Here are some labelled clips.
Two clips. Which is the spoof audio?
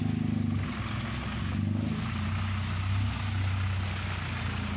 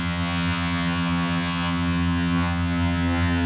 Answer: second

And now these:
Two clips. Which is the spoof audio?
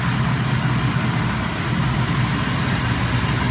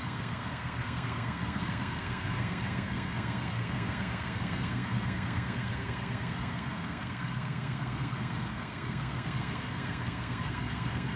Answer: second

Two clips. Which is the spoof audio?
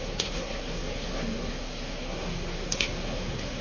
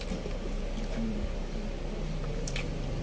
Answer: first